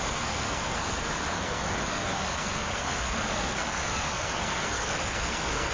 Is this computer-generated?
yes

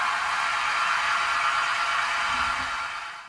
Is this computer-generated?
no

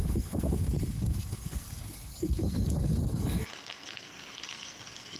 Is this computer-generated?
yes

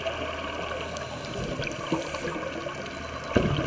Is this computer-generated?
no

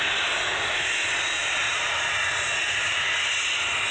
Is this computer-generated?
no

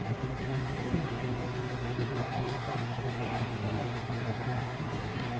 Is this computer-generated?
yes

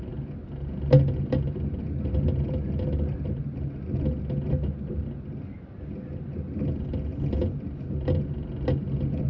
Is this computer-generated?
no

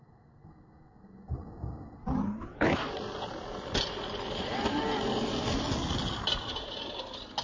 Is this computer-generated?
no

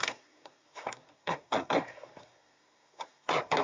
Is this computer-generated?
yes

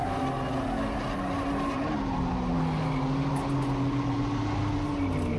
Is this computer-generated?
no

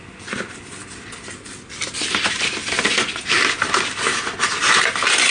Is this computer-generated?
no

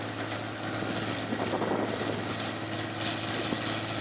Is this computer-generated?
no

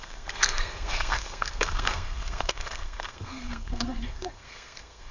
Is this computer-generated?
yes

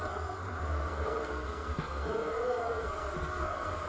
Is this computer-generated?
yes